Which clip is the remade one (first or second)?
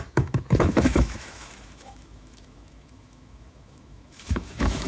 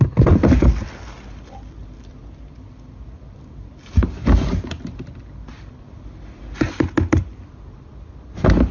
first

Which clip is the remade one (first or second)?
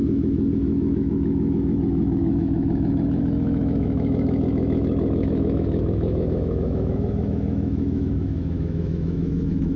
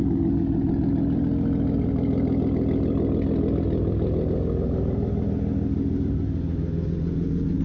first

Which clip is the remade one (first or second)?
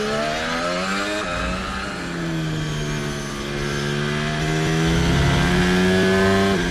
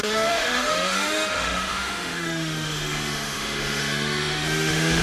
second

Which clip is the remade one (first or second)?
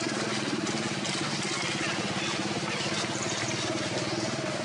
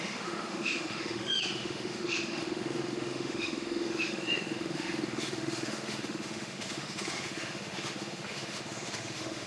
second